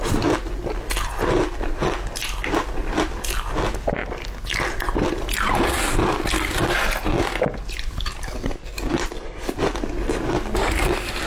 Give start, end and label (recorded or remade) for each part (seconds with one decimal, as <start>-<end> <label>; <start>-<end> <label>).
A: 0.0-2.8 recorded; 2.8-3.4 remade; 3.4-11.3 recorded